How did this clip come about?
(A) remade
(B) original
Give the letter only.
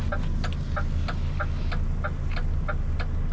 B